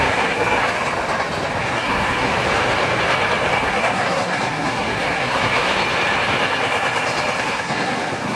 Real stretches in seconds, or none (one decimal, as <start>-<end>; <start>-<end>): 0.7-1.6; 2.3-3.6; 5.7-7.4